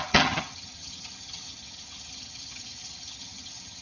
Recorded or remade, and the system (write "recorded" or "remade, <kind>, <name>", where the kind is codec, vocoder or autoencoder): remade, vocoder, HiFi-GAN